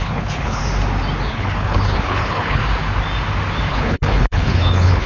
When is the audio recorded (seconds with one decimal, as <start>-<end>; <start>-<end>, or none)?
0.6-1.3; 2.6-3.7